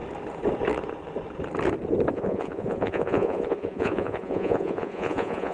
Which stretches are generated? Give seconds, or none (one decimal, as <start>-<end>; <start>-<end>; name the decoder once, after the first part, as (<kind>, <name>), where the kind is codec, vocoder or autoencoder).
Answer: 2.1-5.5 (vocoder, Vocos)